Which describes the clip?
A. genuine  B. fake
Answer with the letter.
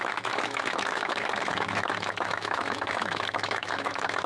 B